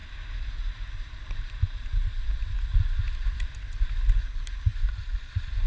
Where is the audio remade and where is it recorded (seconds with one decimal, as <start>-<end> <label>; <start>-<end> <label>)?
0.0-2.7 recorded; 2.7-3.8 remade; 3.8-4.7 recorded; 4.7-5.7 remade